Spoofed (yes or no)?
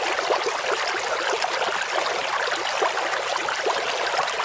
no